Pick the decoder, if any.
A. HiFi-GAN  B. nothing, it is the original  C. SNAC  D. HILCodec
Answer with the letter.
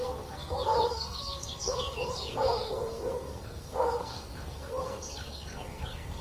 C